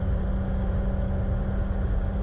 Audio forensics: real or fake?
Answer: real